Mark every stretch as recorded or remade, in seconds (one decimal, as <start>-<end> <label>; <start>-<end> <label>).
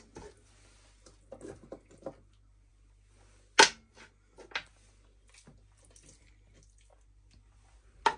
0.0-8.2 recorded